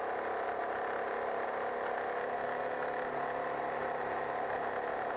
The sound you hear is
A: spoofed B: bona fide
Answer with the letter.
B